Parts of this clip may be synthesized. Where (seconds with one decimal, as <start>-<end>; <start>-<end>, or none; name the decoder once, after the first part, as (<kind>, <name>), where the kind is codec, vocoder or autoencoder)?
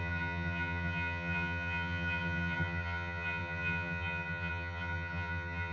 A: 0.0-5.7 (vocoder, HiFi-GAN)